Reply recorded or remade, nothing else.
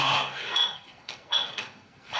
remade